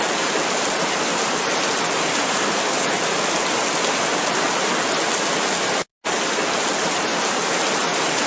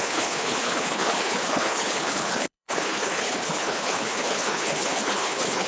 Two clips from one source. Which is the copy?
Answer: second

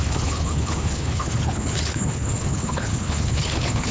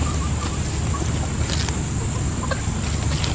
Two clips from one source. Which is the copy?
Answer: first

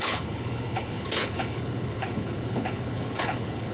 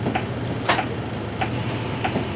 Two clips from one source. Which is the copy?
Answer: first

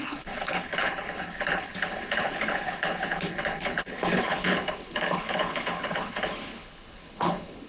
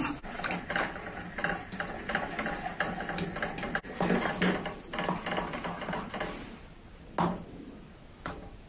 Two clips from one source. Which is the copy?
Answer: first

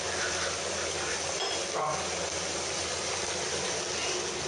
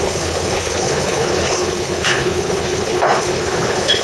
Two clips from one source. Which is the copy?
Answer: second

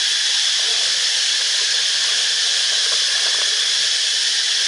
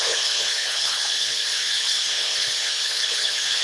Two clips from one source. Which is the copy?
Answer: second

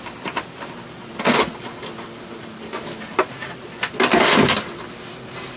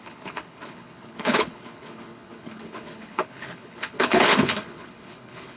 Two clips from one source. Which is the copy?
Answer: second